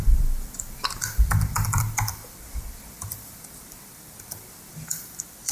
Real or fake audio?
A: fake